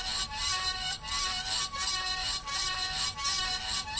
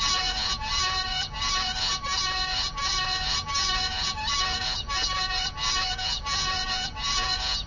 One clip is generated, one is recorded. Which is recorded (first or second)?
first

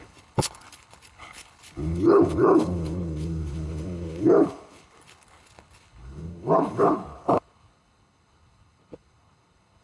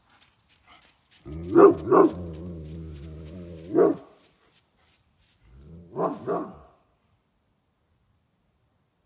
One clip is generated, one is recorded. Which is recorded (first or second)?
second